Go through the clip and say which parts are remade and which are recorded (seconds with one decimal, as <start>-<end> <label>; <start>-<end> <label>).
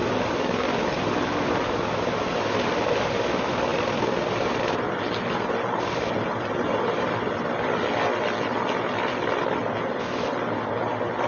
0.0-11.3 recorded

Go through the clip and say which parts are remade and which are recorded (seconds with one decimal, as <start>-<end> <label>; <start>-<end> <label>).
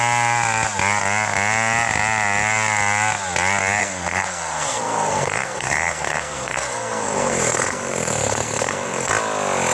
0.0-3.8 recorded; 3.8-9.1 remade; 9.1-9.7 recorded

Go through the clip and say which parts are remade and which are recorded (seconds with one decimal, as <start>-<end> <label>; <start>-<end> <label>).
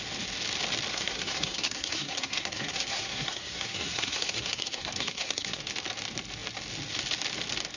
0.0-0.9 recorded; 0.9-5.6 remade; 5.6-7.8 recorded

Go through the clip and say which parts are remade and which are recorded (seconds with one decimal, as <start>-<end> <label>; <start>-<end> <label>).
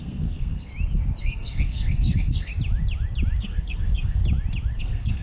0.0-0.7 remade; 0.7-1.2 recorded; 1.2-2.5 remade; 2.5-3.4 recorded; 3.4-4.2 remade; 4.2-4.8 recorded; 4.8-5.2 remade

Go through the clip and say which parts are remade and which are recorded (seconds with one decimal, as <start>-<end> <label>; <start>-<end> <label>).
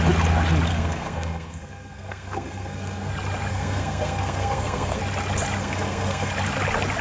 0.0-0.7 recorded; 0.7-3.1 remade; 3.1-3.5 recorded; 3.5-5.0 remade; 5.0-5.6 recorded; 5.6-6.3 remade; 6.3-7.0 recorded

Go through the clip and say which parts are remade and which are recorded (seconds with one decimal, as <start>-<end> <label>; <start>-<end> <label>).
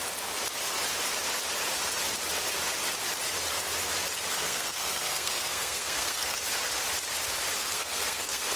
0.0-4.3 recorded; 4.3-6.4 remade; 6.4-7.6 recorded; 7.6-8.6 remade